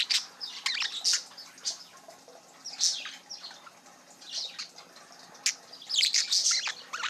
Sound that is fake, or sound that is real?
real